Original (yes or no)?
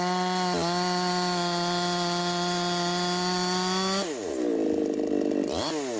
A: yes